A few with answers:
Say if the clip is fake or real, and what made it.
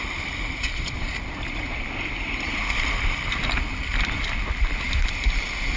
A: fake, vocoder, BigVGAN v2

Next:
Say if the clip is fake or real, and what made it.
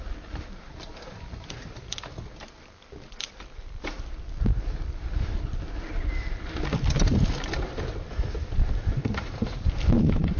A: fake, vocoder, BigVGAN v2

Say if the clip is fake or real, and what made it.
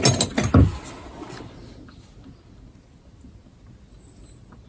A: real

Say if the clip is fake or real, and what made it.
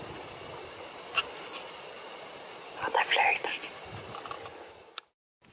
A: real